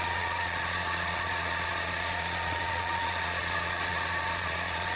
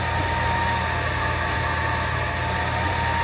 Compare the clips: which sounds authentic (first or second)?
second